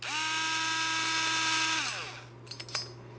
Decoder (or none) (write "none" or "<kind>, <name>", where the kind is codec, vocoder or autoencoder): none